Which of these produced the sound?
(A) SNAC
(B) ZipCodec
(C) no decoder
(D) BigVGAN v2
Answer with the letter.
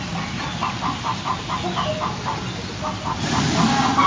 C